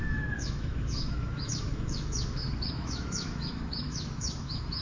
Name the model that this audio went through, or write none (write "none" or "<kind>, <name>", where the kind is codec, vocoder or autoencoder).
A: autoencoder, DAC-VAE